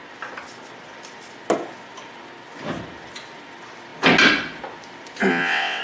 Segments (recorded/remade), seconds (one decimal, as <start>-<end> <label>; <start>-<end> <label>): 0.0-5.3 recorded; 5.3-5.8 remade